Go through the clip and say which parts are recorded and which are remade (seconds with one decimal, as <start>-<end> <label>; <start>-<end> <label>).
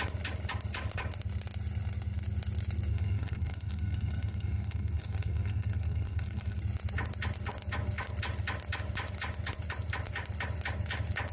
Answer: 0.0-2.9 recorded; 2.9-6.6 remade; 6.6-11.3 recorded